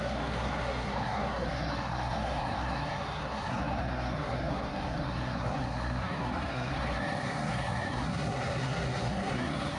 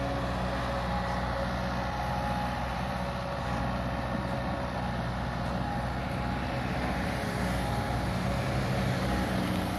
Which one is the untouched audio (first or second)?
second